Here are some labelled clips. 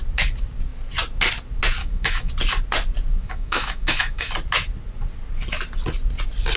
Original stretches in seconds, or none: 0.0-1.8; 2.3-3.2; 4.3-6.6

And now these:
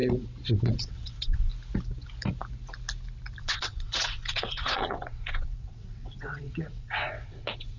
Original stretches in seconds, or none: 0.0-0.5; 1.5-3.4

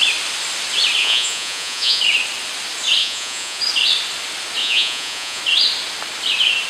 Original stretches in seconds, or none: 0.0-1.0; 2.0-3.0; 3.6-4.6; 5.4-6.7

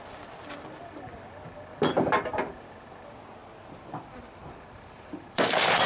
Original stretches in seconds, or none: 0.0-3.4

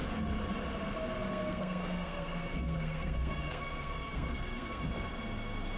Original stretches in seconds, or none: 0.0-1.3; 4.8-5.8

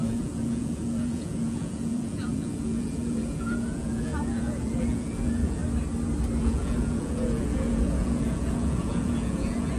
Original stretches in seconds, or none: 5.6-6.4